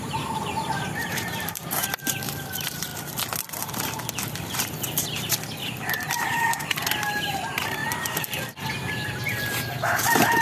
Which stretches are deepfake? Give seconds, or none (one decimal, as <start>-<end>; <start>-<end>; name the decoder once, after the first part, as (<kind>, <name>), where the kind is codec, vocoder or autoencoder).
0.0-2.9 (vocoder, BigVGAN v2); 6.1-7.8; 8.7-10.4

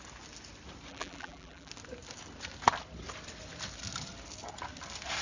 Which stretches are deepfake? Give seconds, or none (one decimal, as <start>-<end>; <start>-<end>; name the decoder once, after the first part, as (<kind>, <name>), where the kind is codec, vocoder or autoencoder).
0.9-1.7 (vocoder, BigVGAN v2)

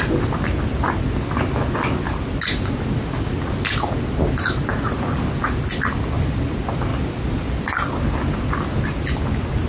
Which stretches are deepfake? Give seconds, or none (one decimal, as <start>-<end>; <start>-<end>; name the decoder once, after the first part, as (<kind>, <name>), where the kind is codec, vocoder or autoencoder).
6.9-8.4 (vocoder, BigVGAN v2)

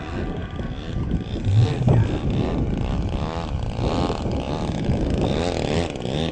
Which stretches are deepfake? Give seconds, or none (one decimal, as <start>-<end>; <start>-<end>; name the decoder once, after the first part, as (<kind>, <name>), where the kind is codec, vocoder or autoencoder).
none